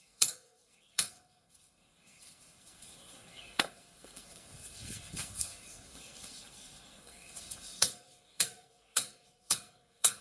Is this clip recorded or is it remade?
remade